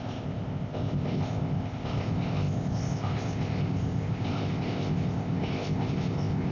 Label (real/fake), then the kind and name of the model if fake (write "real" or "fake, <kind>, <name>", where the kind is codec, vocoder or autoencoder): fake, codec, ZipCodec